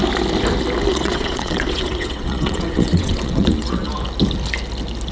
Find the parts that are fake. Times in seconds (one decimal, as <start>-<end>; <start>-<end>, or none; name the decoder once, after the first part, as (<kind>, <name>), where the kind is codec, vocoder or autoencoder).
0.9-3.9 (vocoder, WaveNeXt)